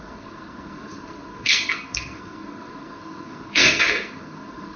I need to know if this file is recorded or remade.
remade